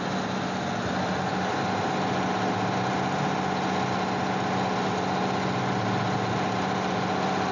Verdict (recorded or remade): recorded